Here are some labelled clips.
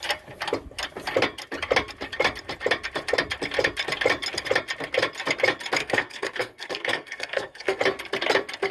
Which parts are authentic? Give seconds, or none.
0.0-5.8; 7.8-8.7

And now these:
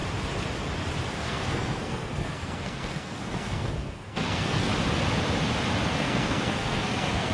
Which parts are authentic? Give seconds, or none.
0.0-1.1; 4.7-5.9

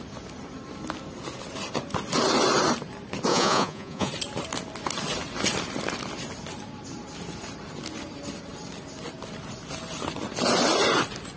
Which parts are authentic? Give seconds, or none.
0.0-3.3; 4.1-11.4

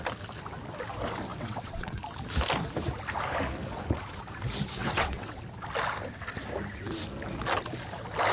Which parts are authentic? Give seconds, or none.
0.0-1.3; 2.0-4.8; 5.4-8.3

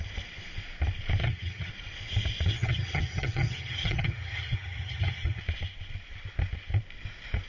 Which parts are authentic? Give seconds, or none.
0.0-1.2; 1.7-2.5; 5.4-7.5